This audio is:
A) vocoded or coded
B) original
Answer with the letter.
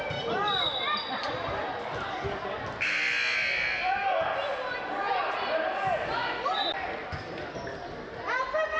B